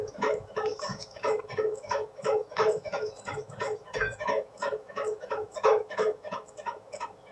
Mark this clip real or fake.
fake